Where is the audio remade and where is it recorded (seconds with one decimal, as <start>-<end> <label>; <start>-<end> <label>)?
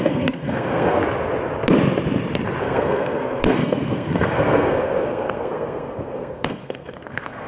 0.0-1.0 remade; 1.0-2.6 recorded; 2.6-7.5 remade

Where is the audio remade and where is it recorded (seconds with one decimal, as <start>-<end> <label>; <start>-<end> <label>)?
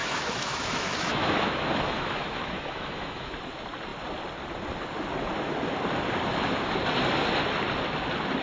0.0-3.3 remade; 3.3-8.4 recorded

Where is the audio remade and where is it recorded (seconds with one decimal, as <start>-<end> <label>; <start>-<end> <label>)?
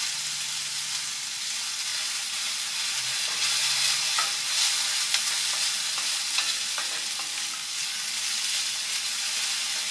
0.0-7.3 recorded; 7.3-8.4 remade; 8.4-9.9 recorded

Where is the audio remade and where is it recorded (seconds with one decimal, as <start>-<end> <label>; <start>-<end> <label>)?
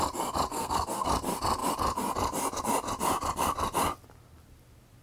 0.0-0.5 recorded; 0.5-1.1 remade; 1.1-5.0 recorded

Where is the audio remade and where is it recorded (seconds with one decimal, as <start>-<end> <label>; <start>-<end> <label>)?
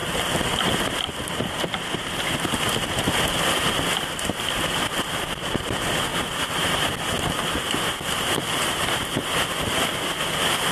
0.0-6.1 recorded; 6.1-6.9 remade; 6.9-10.7 recorded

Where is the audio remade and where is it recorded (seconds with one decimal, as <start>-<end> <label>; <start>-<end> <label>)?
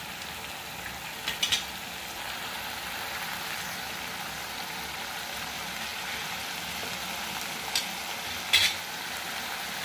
0.0-9.8 recorded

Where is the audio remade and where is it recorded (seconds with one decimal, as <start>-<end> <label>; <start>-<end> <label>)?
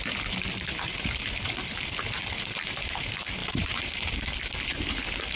0.0-3.4 recorded; 3.4-4.2 remade; 4.2-5.4 recorded